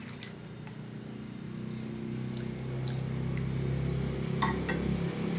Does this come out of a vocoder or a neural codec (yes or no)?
no